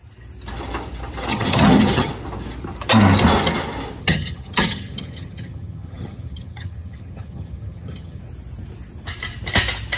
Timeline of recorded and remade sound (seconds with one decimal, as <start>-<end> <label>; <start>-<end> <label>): 0.0-1.3 recorded; 1.3-2.1 remade; 2.1-4.0 recorded; 4.0-8.2 remade; 8.2-10.0 recorded